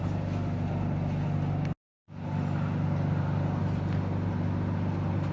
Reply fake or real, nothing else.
real